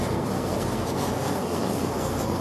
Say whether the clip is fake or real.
fake